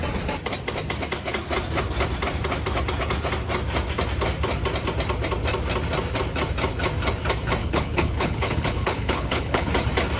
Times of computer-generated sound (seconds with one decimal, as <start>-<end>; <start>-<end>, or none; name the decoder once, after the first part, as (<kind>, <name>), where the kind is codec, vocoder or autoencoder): 7.6-9.7 (codec, HILCodec)